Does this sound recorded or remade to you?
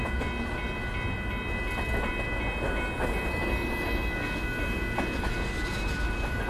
recorded